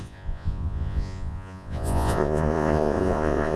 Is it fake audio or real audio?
fake